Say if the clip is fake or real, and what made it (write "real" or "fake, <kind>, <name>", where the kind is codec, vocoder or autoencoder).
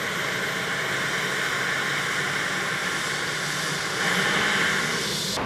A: real